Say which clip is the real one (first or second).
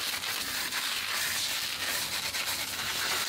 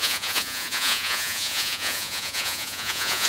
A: first